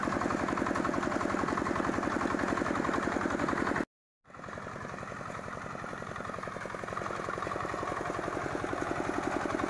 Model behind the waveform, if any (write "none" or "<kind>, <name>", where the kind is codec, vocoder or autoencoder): none